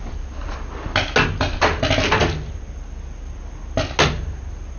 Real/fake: real